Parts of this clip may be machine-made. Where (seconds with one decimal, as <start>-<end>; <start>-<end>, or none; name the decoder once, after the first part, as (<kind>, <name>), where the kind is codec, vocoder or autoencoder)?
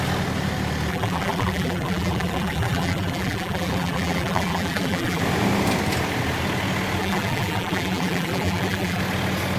0.9-5.2 (vocoder, BigVGAN v2); 7.0-9.0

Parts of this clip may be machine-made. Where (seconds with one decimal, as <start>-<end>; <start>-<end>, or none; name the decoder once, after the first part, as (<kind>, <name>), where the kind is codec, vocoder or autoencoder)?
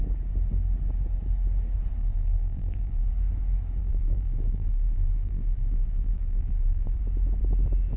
2.0-3.1 (vocoder, BigVGAN v2); 3.8-7.0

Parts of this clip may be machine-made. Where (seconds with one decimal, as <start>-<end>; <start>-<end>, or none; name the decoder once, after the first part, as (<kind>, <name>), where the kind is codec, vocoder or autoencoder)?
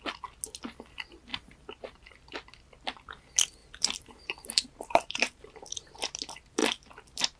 3.6-5.9 (vocoder, BigVGAN v2)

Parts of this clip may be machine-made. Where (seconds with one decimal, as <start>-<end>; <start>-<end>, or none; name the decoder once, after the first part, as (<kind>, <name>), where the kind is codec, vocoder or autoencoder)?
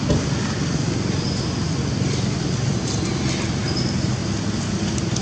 none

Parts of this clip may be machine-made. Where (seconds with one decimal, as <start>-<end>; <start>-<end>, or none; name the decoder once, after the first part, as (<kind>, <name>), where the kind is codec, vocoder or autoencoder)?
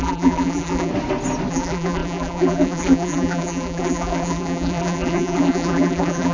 0.0-0.9 (vocoder, BigVGAN v2); 1.5-6.3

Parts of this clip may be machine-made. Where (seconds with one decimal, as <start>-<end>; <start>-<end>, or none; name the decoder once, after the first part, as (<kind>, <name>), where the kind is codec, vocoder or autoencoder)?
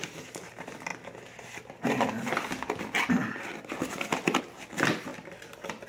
none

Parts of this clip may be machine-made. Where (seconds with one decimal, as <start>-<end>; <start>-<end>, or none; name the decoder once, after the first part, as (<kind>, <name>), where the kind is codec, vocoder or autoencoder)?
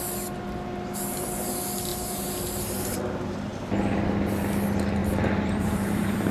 1.9-3.0 (vocoder, BigVGAN v2); 5.0-6.3